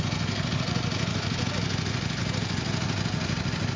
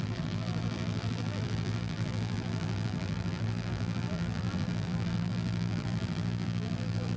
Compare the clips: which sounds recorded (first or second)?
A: first